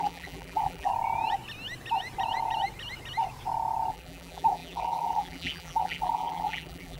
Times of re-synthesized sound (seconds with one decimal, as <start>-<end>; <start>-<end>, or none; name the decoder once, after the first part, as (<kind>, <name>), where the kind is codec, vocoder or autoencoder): 0.0-0.9 (vocoder, BigVGAN v2); 3.9-7.0